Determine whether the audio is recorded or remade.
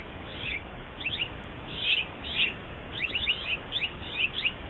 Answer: remade